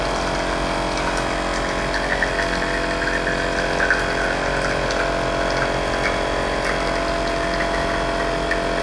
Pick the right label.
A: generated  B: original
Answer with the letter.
B